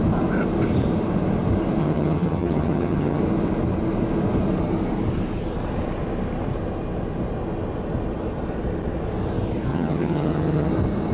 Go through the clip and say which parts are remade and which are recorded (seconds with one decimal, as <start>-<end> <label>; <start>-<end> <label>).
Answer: 0.0-1.8 recorded; 1.8-3.2 remade; 3.2-9.7 recorded; 9.7-10.7 remade; 10.7-11.1 recorded